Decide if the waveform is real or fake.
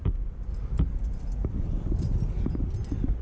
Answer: real